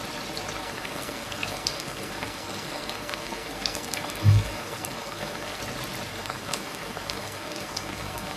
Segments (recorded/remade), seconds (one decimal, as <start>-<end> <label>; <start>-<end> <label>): 0.0-0.6 recorded; 0.6-5.6 remade; 5.6-6.1 recorded; 6.1-8.4 remade